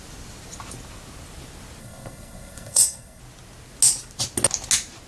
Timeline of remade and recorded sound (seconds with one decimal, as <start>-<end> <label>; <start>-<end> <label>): 0.0-1.8 recorded; 1.8-3.2 remade; 3.2-5.1 recorded